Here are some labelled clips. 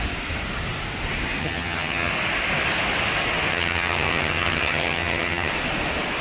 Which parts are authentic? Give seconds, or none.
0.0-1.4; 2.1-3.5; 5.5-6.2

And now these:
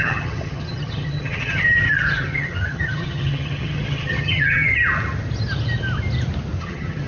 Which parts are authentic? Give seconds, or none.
4.7-6.6

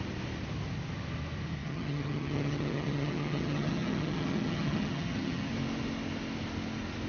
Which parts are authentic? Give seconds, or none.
0.0-1.6; 5.5-7.1

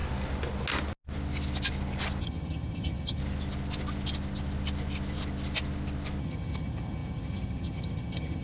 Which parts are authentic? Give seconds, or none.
0.0-2.2; 3.2-6.2

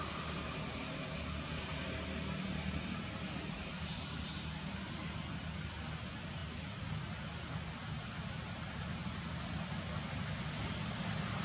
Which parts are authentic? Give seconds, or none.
0.0-11.4

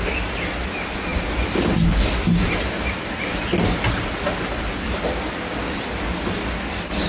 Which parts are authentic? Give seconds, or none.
0.0-7.1

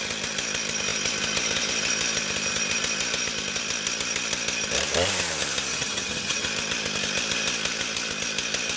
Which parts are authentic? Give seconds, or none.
0.0-5.7; 6.5-8.8

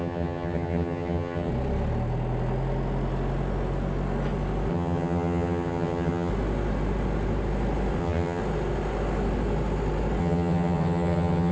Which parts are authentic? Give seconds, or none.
1.5-4.7; 6.3-8.0; 8.4-10.2